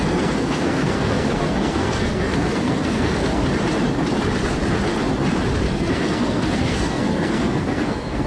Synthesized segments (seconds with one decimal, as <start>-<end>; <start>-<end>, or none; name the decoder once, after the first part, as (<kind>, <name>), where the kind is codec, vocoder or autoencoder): 0.0-3.4 (codec, SNAC); 5.7-8.3